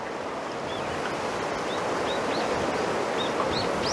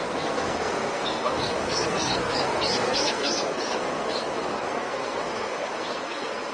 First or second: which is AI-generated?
second